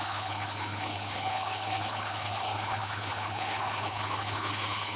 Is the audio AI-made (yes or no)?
yes